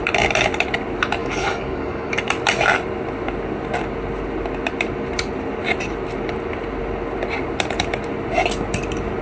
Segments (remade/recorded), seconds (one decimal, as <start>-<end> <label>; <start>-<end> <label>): 0.0-1.2 recorded; 1.2-2.1 remade; 2.1-9.2 recorded